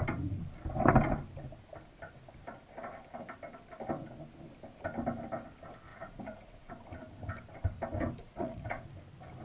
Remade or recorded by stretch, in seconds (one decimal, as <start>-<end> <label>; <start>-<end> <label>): 0.0-5.9 recorded; 5.9-6.7 remade; 6.7-8.2 recorded; 8.2-8.8 remade; 8.8-9.4 recorded